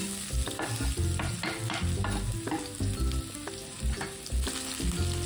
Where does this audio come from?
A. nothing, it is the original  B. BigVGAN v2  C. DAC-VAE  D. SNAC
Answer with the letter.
A